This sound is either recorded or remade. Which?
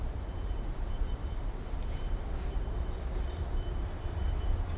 remade